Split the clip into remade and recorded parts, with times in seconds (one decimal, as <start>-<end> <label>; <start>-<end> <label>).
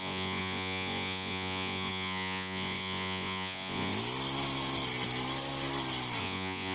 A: 0.0-3.9 remade; 3.9-6.2 recorded; 6.2-6.7 remade